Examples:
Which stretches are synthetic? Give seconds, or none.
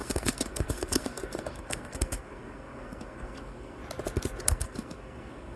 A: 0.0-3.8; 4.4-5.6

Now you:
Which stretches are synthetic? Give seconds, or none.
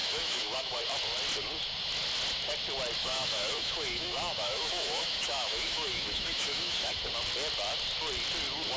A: 0.0-0.8; 3.0-7.0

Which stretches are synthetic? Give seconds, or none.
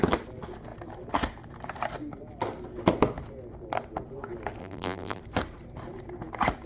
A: 4.6-5.2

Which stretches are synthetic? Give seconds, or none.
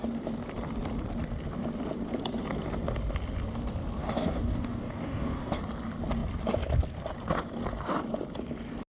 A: 4.0-5.6